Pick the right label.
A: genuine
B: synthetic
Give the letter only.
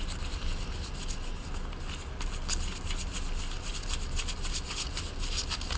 A